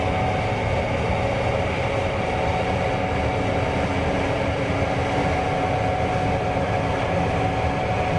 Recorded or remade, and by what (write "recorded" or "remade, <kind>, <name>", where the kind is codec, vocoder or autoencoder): recorded